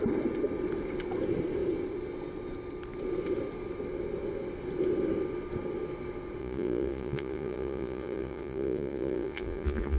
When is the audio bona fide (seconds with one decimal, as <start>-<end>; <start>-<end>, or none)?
0.0-6.4